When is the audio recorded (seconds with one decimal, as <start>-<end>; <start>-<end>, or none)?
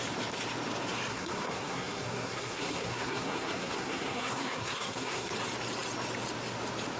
0.0-1.1; 5.3-7.0